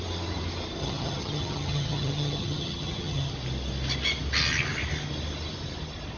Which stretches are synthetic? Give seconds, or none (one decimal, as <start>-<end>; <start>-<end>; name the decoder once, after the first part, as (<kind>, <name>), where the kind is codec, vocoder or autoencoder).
0.8-3.3 (vocoder, HiFi-GAN)